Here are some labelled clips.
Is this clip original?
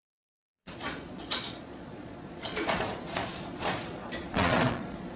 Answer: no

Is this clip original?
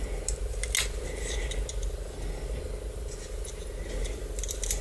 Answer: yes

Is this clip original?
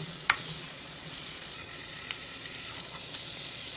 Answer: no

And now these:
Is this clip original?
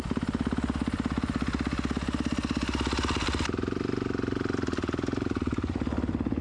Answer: yes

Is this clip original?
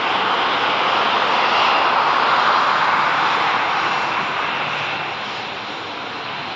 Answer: yes